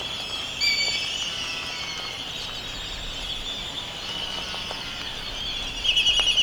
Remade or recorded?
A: recorded